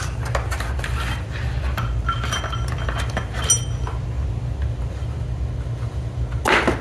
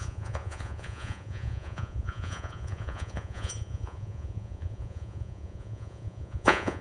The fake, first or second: second